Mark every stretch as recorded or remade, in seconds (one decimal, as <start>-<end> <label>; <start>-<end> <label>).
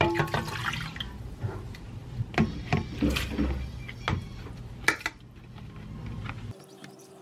0.0-7.2 recorded